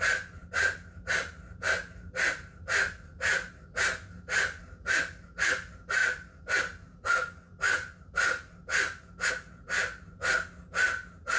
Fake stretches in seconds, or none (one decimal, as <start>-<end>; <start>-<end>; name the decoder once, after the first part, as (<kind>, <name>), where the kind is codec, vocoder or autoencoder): none